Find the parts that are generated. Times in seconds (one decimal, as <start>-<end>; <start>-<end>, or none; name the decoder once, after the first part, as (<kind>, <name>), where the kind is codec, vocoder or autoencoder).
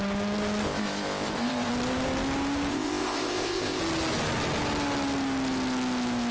0.6-1.7 (codec, ZipCodec); 2.7-3.8